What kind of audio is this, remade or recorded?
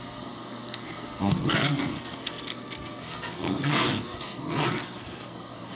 remade